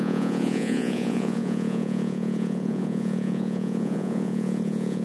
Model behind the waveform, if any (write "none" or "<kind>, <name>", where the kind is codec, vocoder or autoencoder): vocoder, Vocos